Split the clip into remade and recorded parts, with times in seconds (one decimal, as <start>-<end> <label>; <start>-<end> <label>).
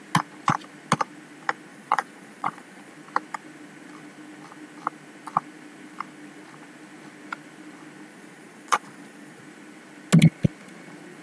0.0-1.7 recorded; 1.7-2.9 remade; 2.9-8.1 recorded; 8.1-9.4 remade; 9.4-11.2 recorded